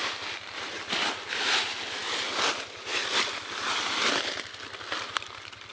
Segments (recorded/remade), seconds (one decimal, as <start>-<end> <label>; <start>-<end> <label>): 0.0-5.7 recorded